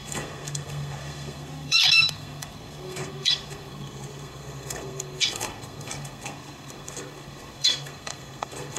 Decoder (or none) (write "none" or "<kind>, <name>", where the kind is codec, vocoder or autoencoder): codec, SNAC